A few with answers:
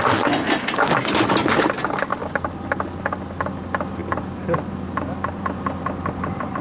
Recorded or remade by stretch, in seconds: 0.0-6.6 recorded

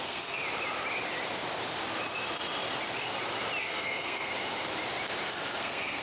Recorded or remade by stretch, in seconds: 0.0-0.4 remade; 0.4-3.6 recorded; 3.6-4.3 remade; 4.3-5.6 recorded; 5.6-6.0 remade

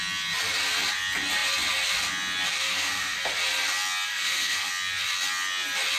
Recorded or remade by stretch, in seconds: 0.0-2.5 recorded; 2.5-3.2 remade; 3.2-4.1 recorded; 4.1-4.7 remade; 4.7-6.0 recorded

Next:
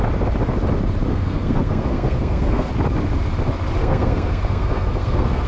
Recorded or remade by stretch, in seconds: 0.0-1.1 recorded; 1.1-2.7 remade; 2.7-3.8 recorded; 3.8-5.5 remade

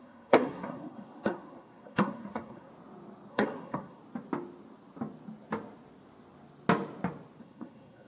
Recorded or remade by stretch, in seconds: 0.0-2.7 remade; 2.7-3.3 recorded; 3.3-4.0 remade; 4.0-7.4 recorded; 7.4-8.1 remade

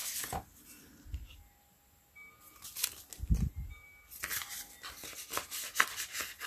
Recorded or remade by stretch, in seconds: 0.0-6.5 recorded